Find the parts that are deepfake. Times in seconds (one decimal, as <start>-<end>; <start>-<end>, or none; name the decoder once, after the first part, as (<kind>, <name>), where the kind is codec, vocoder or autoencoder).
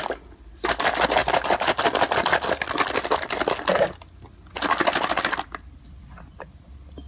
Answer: none